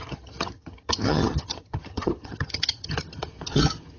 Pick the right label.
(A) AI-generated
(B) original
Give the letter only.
A